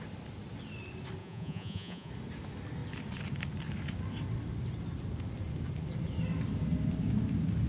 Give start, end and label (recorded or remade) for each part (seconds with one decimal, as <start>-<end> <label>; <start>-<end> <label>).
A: 0.0-1.2 recorded; 1.2-2.1 remade; 2.1-7.7 recorded